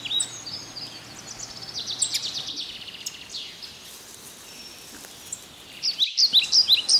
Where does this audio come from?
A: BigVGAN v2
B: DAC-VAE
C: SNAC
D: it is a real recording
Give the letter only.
D